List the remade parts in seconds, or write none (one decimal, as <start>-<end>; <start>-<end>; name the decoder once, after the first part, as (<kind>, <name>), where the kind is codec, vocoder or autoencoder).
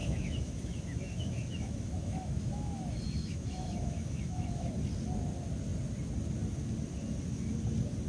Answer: 0.0-4.7 (autoencoder, DAC-VAE)